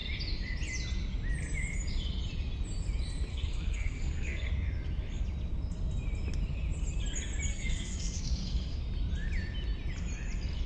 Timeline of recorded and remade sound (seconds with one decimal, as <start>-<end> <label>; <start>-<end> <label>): 0.0-3.3 recorded; 3.3-4.5 remade; 4.5-7.5 recorded; 7.5-8.8 remade; 8.8-10.7 recorded